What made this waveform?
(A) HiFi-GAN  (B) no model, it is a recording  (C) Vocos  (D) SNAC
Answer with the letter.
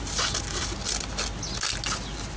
B